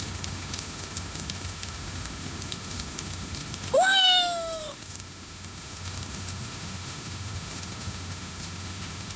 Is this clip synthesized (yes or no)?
yes